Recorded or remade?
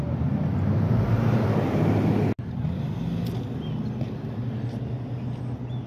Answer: recorded